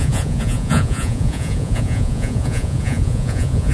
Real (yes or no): no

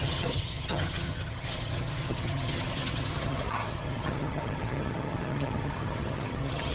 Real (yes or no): no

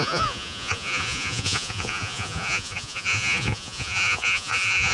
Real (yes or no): no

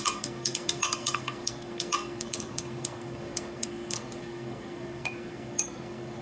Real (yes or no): no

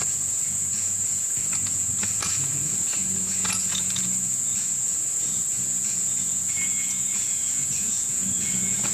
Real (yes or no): no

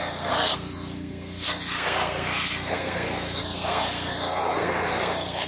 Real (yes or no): no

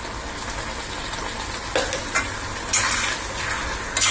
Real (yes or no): yes